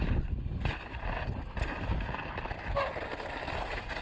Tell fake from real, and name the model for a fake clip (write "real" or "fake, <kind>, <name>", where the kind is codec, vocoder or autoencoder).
real